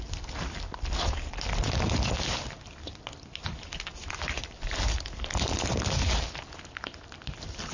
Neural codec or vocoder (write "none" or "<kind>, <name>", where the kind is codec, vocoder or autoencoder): none